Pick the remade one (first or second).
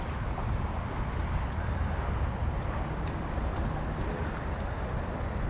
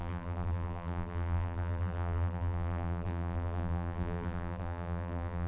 second